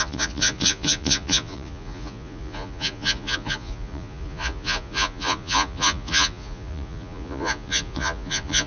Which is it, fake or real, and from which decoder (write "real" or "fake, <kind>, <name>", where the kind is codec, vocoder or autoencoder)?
fake, vocoder, Vocos